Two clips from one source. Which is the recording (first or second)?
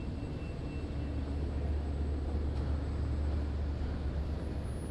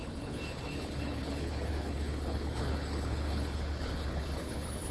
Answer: first